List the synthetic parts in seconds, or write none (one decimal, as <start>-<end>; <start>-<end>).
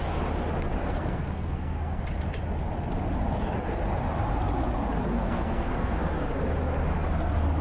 0.8-2.0; 5.1-6.0